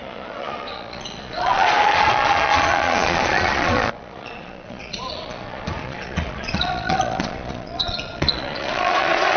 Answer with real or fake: fake